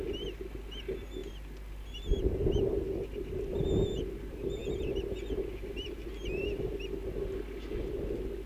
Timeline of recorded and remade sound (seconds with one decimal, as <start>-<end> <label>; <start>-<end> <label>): 0.0-8.5 recorded